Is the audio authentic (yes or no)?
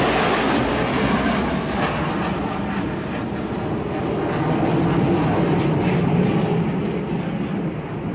yes